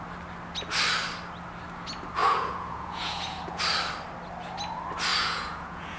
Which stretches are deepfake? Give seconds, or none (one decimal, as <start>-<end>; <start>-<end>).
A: 2.2-3.6; 5.1-6.0